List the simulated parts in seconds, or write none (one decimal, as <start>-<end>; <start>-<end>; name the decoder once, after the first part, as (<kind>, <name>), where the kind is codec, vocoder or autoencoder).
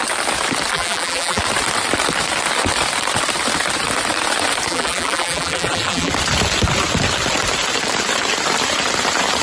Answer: 0.7-1.4 (vocoder, BigVGAN v2); 4.7-6.1